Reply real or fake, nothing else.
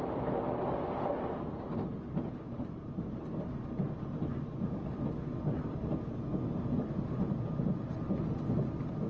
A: real